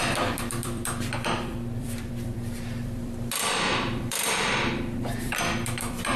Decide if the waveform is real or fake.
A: fake